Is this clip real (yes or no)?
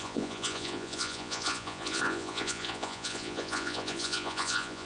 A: no